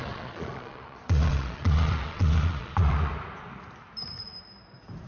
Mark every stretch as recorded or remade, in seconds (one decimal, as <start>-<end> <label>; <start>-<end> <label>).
0.0-3.1 remade; 3.1-5.1 recorded